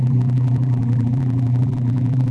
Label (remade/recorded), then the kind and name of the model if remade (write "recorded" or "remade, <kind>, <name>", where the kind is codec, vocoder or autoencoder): remade, vocoder, BigVGAN v2